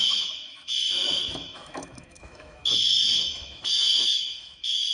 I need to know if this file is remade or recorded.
remade